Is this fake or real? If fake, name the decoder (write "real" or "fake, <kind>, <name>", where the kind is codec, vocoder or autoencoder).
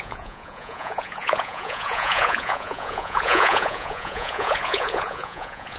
fake, vocoder, Vocos